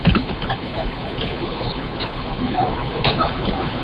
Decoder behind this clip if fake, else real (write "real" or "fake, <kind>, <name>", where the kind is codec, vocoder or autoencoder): fake, codec, HILCodec